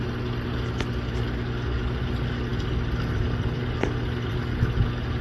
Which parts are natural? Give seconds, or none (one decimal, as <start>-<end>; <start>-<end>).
0.0-5.2